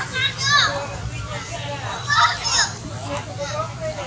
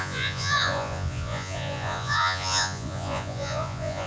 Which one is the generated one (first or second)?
second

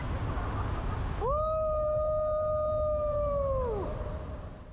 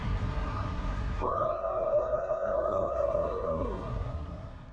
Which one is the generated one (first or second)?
second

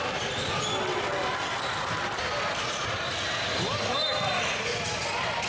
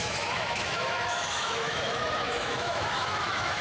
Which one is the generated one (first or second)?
second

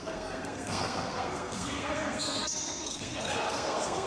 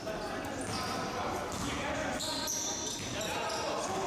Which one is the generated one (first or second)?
first